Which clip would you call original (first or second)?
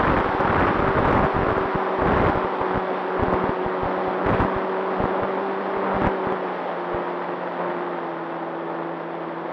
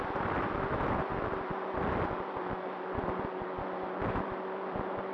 first